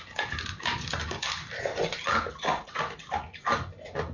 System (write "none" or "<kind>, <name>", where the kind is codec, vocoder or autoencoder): none